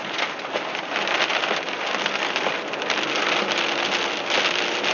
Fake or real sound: real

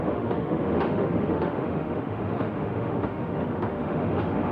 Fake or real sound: fake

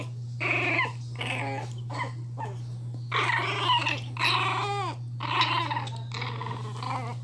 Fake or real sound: real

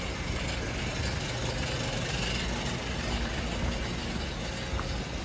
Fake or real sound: real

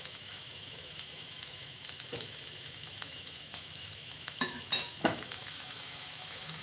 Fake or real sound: fake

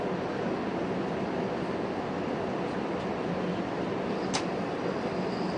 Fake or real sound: real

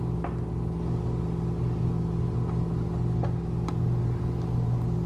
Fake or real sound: real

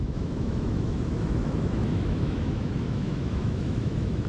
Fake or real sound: fake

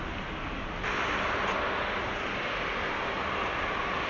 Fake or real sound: real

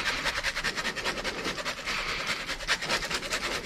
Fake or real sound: real